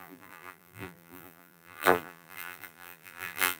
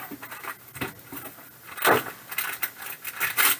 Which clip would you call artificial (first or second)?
first